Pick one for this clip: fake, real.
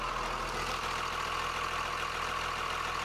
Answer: real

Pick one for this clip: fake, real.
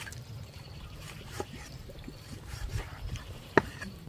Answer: fake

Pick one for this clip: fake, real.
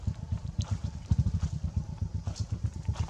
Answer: real